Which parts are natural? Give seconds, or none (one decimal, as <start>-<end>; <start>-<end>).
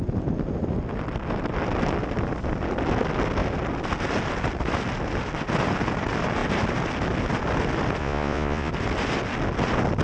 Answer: 0.0-8.0; 8.7-10.0